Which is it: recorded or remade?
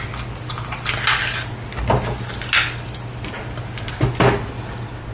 recorded